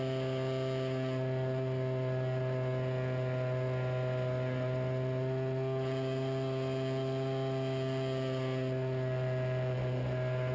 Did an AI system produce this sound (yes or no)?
no